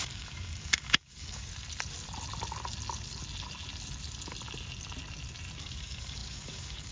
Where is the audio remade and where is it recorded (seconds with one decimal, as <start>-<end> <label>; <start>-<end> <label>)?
0.0-1.5 remade; 1.5-5.6 recorded; 5.6-6.9 remade